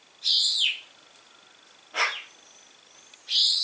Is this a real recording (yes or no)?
yes